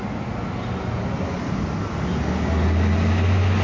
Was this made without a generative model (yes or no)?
yes